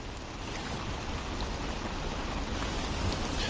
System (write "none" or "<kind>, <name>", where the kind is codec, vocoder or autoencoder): none